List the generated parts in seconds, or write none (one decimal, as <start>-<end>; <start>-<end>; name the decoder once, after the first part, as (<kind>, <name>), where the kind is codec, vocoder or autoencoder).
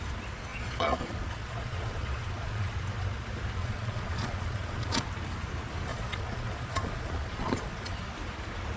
0.5-2.7 (vocoder, Vocos); 3.6-5.1; 5.9-8.1